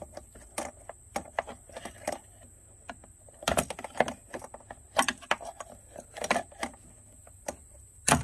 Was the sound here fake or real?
real